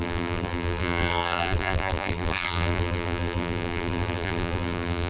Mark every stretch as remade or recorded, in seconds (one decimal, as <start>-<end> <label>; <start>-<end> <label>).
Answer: 0.0-5.1 remade